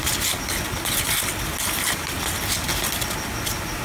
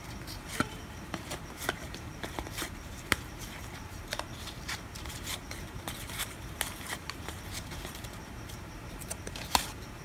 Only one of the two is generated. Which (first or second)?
second